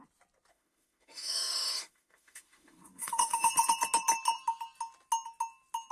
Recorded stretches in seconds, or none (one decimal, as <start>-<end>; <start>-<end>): 0.0-0.5; 3.5-5.9